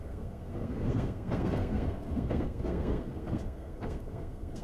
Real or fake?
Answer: fake